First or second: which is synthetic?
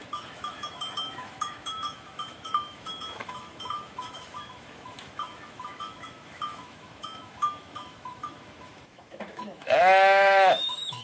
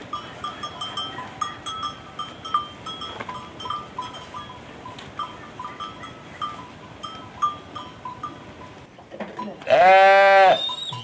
first